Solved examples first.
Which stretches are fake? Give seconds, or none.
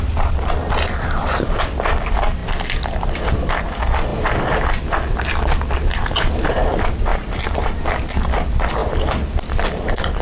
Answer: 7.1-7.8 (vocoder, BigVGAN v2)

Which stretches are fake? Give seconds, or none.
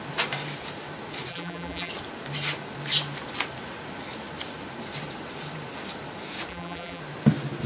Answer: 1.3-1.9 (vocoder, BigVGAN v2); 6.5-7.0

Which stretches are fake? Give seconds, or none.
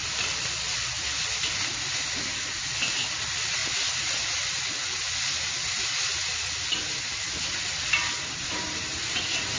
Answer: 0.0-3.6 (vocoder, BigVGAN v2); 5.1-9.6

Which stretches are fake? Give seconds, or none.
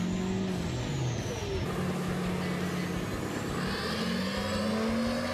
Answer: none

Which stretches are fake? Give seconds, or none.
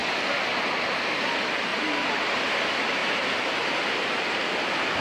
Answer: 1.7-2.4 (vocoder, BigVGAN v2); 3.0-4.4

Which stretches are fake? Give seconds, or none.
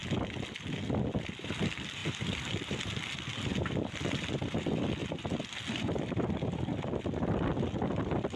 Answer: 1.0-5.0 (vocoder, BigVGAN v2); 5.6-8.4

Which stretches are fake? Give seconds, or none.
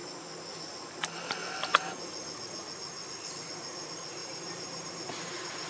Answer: 4.2-4.9 (vocoder, BigVGAN v2)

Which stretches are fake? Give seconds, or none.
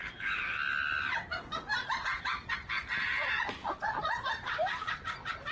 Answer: 0.0-1.2 (vocoder, BigVGAN v2); 1.7-5.0